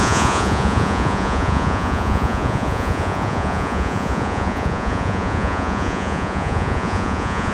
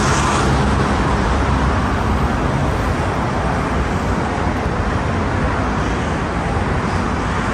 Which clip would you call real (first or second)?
second